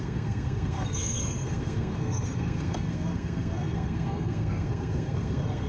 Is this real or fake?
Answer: fake